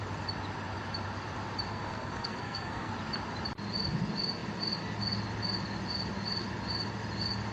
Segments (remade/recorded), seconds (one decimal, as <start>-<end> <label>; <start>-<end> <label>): 0.0-1.7 recorded; 1.7-2.9 remade; 2.9-7.5 recorded